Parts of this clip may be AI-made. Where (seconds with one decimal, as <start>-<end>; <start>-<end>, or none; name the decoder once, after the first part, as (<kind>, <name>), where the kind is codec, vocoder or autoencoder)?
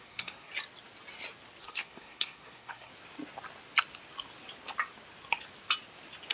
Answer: 0.0-0.5 (codec, SNAC); 1.6-2.9